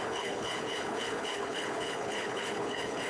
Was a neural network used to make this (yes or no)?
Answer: yes